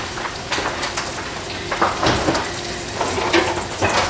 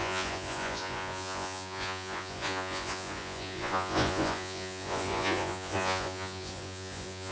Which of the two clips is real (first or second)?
first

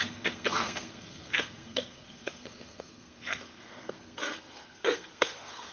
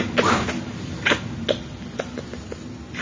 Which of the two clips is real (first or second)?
second